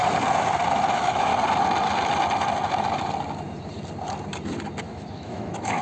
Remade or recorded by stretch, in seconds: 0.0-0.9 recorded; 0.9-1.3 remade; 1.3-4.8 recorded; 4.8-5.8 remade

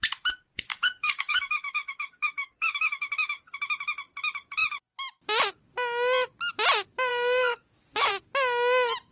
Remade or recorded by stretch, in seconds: 0.0-0.7 recorded; 0.7-3.5 remade; 3.5-7.1 recorded; 7.1-8.1 remade; 8.1-9.1 recorded